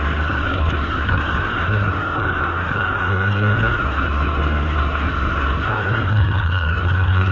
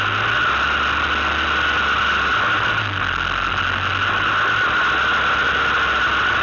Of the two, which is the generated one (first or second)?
first